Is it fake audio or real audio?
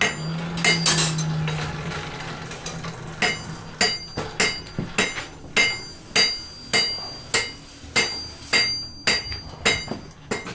real